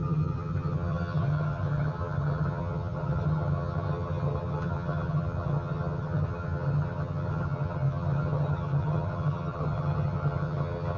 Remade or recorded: remade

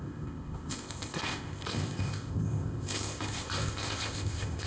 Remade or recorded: remade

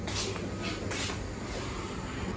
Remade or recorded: recorded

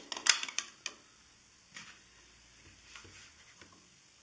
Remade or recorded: recorded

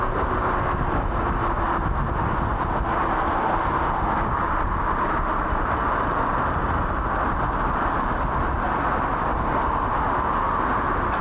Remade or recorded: recorded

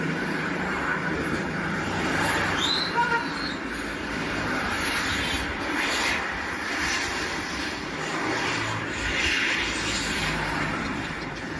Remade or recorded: remade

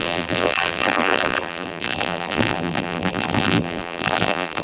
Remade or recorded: remade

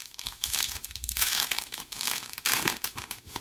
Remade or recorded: remade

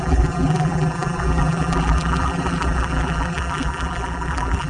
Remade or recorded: remade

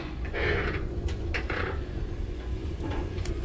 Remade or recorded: remade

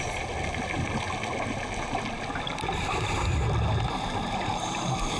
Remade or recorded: recorded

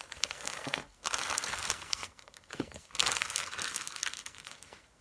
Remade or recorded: remade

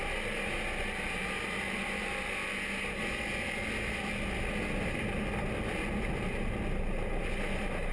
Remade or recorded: recorded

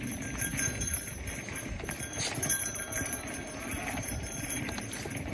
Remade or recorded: remade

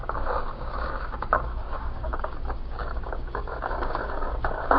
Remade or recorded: remade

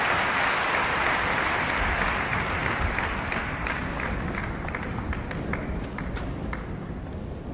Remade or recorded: recorded